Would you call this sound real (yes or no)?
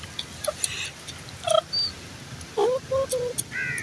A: yes